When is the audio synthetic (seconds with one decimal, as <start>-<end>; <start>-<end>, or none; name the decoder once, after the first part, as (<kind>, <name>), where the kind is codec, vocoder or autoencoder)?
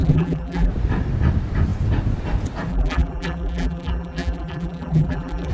0.0-0.7 (vocoder, BigVGAN v2); 2.7-5.5